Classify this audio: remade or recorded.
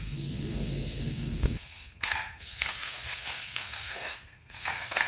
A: remade